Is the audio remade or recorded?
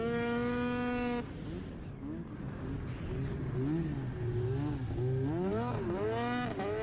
recorded